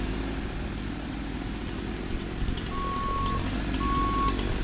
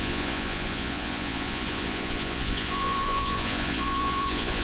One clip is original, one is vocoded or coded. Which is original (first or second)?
first